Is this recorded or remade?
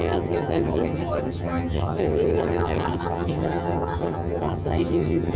remade